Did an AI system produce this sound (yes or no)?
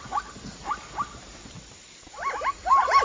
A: no